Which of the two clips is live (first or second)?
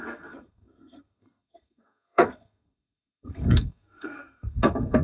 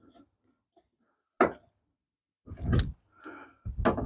second